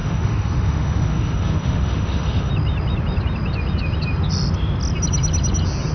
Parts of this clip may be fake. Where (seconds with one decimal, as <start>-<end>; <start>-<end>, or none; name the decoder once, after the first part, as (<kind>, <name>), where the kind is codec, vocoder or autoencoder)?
0.0-2.5 (autoencoder, DAC-VAE)

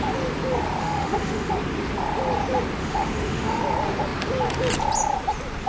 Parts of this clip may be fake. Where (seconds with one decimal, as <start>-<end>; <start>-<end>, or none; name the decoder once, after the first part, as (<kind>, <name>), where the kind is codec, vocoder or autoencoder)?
0.8-1.5 (autoencoder, DAC-VAE); 2.8-3.6

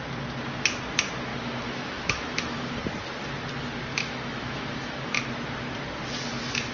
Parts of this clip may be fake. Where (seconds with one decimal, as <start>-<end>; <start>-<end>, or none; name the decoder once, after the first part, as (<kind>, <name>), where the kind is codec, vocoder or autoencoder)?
1.3-2.8 (autoencoder, DAC-VAE); 3.9-5.2

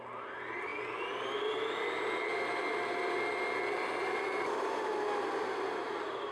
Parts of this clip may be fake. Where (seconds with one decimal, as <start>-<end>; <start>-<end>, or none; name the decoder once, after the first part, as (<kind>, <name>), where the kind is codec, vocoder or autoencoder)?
none

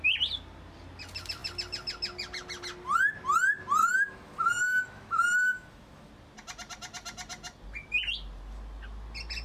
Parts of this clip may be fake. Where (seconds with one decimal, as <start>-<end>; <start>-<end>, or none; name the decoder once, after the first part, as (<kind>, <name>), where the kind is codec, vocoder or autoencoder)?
3.8-6.1 (autoencoder, DAC-VAE)

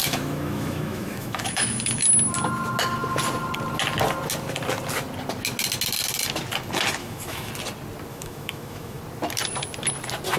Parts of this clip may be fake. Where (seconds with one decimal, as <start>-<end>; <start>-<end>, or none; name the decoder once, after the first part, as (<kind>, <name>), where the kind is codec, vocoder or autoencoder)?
0.0-2.0 (autoencoder, DAC-VAE); 7.0-7.5; 8.1-9.0

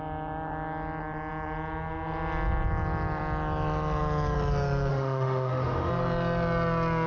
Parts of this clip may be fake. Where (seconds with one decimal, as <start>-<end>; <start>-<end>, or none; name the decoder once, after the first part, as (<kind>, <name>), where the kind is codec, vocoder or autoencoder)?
4.9-5.9 (autoencoder, DAC-VAE)

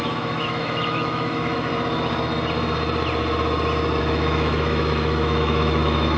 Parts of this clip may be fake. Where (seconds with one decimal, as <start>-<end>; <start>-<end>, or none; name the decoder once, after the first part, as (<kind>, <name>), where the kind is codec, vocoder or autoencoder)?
0.0-1.7 (autoencoder, DAC-VAE); 4.0-6.2